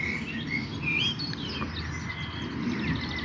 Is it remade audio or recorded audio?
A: recorded